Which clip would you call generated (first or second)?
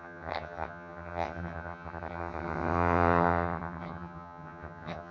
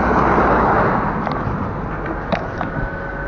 first